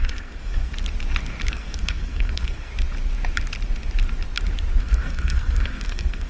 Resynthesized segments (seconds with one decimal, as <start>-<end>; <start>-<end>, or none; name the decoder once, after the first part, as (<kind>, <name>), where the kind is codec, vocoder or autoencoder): 0.0-0.7 (codec, SNAC); 1.5-2.7; 4.8-6.3